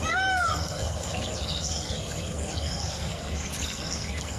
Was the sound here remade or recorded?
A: remade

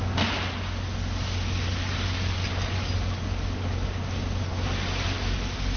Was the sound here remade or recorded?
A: recorded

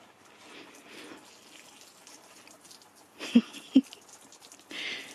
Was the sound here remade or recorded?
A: recorded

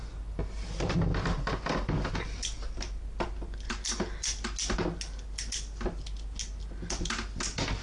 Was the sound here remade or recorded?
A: recorded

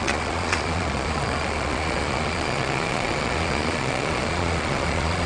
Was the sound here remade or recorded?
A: remade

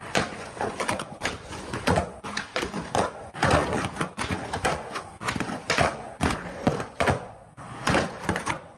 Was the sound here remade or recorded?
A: remade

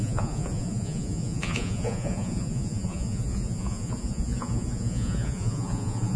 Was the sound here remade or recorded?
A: remade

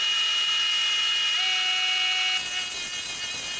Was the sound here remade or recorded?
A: recorded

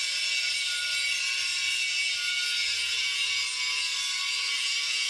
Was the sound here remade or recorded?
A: recorded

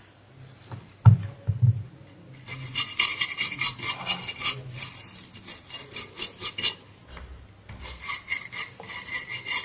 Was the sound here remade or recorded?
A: recorded